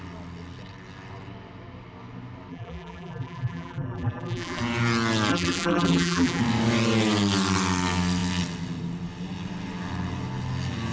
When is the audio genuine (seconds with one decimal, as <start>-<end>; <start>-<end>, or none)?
0.0-2.5; 4.6-5.3; 6.4-10.9